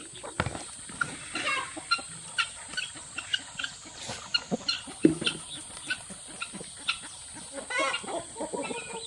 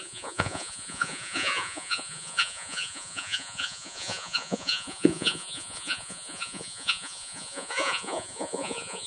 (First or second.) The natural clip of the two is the first